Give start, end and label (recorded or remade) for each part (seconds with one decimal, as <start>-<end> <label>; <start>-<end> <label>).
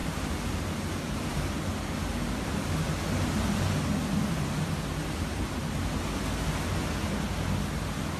0.0-2.5 remade; 2.5-8.2 recorded